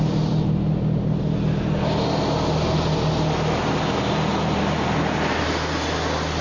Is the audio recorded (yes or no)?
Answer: yes